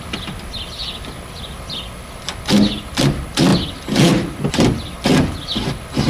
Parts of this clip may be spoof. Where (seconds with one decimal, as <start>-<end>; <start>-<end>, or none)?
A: none